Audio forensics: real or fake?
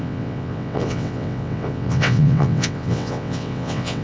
fake